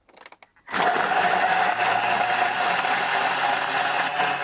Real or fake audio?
real